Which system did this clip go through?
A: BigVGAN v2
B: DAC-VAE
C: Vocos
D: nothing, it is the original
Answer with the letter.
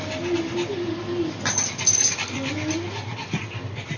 D